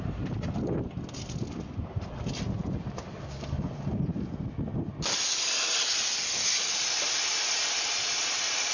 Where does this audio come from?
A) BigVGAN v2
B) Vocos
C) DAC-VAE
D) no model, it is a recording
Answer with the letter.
D